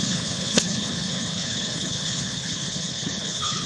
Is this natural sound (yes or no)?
no